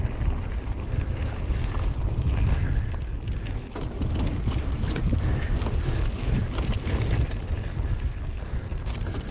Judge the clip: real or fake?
real